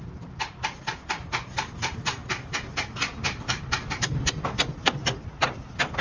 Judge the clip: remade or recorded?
recorded